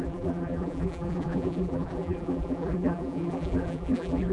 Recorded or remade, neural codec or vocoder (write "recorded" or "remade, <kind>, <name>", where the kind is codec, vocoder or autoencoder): remade, vocoder, BigVGAN v2